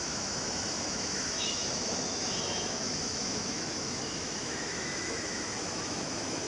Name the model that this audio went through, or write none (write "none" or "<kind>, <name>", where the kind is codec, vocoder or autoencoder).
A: autoencoder, DAC-VAE